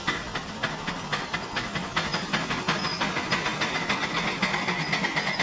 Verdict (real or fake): real